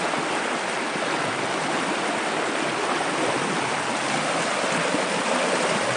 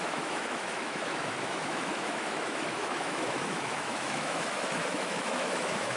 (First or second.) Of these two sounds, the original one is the first